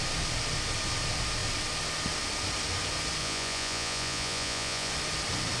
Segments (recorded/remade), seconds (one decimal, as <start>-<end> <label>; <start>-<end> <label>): 0.0-3.2 recorded; 3.2-4.9 remade; 4.9-5.6 recorded